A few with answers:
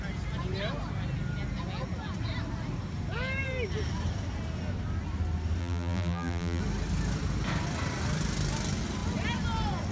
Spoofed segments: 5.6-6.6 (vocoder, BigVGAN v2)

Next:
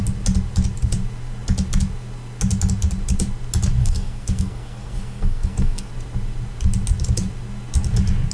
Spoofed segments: 3.8-5.9 (codec, SNAC)

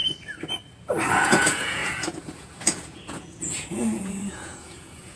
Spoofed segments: 1.1-5.2 (vocoder, Vocos)

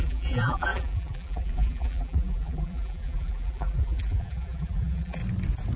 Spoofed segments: 0.0-5.2 (vocoder, BigVGAN v2)

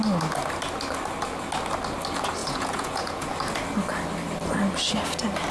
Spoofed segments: 2.4-3.3 (vocoder, Vocos)

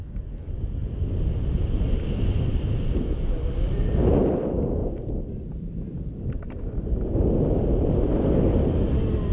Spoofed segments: none